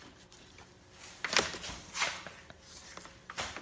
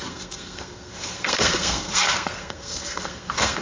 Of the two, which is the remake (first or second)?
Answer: second